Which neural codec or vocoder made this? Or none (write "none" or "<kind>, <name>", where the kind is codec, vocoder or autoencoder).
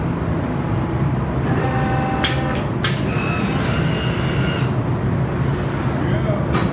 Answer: none